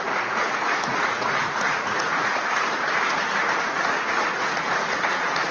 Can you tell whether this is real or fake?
fake